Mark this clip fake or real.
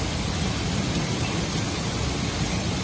real